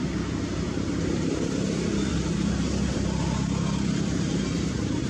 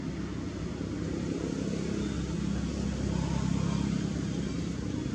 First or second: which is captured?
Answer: second